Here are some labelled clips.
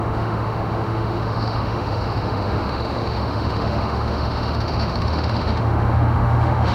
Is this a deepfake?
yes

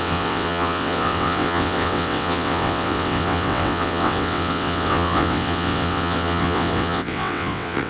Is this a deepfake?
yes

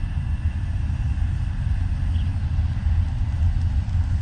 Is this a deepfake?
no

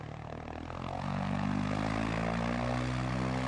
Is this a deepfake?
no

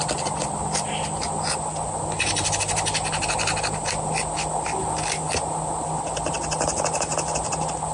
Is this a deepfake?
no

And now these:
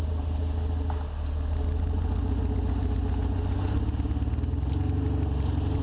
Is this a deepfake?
no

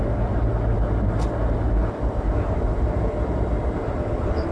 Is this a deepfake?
no